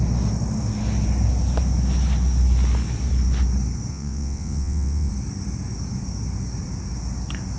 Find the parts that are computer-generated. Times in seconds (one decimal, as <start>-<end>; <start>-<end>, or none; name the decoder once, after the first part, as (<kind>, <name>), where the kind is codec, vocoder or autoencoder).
3.9-5.1 (vocoder, WaveNeXt)